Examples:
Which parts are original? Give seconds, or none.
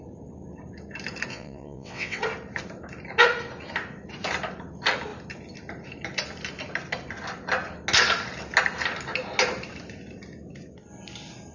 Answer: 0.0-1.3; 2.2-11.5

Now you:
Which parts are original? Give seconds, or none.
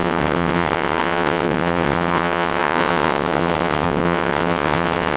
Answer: none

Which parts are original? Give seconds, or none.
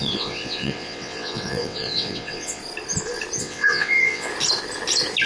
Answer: 2.6-3.4; 4.3-5.3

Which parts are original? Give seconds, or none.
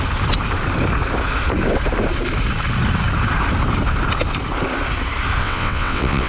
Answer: 0.0-5.4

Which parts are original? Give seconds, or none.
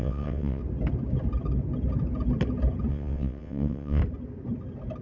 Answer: 0.6-2.9; 4.0-5.0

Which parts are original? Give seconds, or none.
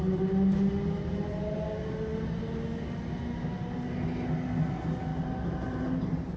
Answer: 0.0-6.4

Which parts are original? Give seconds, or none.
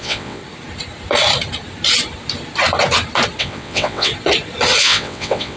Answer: 0.4-3.4; 4.1-4.8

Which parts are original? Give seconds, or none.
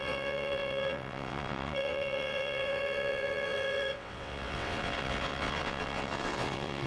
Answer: none